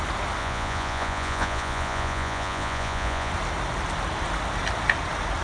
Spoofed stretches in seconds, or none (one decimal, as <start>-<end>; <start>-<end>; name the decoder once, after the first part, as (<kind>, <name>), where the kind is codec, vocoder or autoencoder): 0.4-3.3 (vocoder, Vocos)